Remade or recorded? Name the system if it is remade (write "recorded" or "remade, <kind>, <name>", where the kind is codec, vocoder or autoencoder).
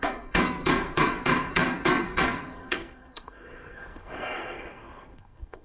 remade, codec, SNAC